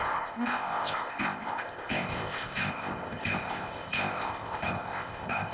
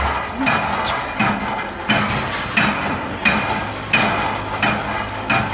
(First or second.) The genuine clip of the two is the second